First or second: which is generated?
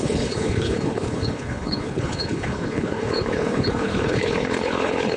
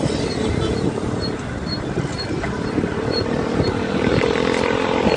first